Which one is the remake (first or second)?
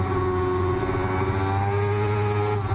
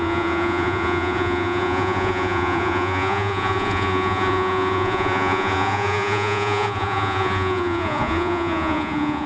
second